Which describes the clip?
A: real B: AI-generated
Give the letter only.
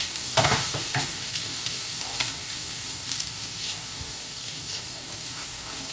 B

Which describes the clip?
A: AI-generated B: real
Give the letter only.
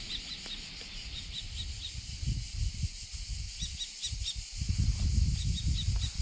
B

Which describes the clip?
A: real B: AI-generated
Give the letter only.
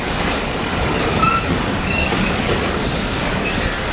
B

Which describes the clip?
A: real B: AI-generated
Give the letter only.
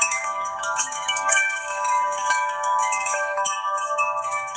B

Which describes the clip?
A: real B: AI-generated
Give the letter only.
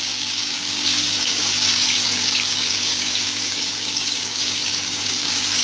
B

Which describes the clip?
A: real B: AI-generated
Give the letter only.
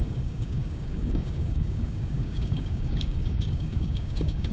B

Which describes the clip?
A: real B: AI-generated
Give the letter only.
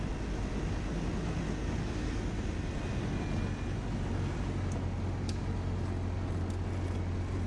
A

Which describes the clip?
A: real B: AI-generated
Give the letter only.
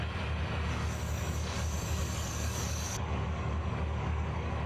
B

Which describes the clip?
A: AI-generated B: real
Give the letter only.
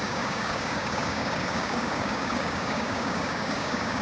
A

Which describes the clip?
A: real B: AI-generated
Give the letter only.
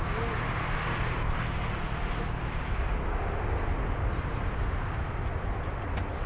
A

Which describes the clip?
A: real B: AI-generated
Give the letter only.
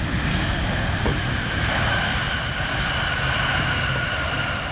A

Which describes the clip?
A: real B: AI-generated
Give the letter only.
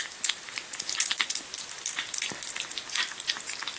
A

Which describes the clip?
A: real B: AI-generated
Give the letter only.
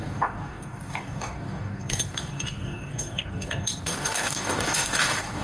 B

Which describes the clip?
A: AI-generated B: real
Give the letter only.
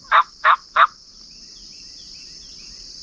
B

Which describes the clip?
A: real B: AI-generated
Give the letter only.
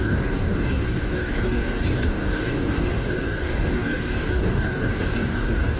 B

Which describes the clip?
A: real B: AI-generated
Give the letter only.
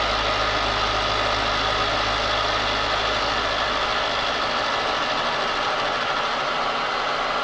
A